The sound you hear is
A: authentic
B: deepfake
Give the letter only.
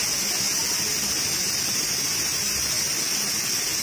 A